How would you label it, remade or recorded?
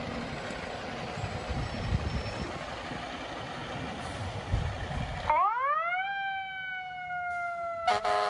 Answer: recorded